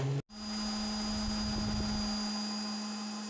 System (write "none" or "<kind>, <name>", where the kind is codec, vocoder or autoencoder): none